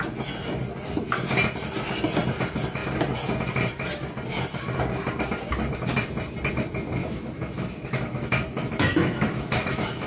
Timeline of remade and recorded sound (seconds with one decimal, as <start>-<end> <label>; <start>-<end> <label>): 0.0-7.0 recorded; 7.0-10.1 remade